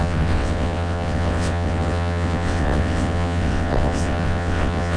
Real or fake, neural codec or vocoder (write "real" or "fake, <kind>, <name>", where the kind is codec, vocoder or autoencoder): fake, vocoder, WaveNeXt